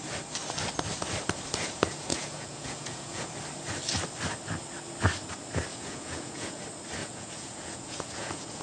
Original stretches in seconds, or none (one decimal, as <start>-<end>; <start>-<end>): 0.0-2.1; 3.3-5.7; 6.6-7.0